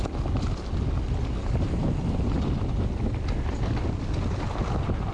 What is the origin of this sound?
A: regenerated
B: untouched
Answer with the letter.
B